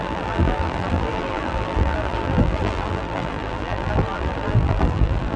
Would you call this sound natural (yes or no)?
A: no